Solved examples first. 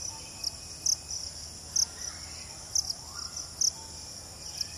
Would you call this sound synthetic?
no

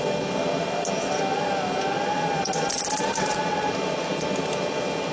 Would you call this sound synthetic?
no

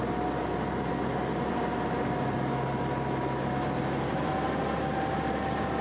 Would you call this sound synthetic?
no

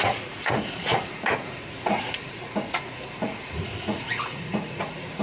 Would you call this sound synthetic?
yes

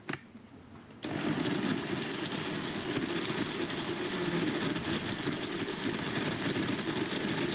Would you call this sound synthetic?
no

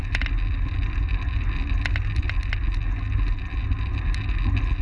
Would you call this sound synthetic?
no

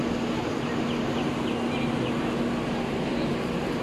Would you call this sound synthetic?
no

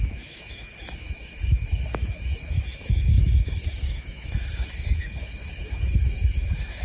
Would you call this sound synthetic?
yes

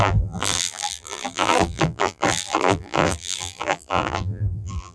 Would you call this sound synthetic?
yes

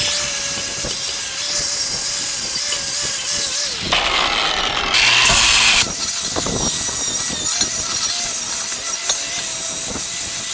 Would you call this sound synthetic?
no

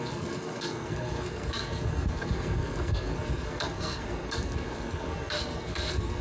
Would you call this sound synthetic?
yes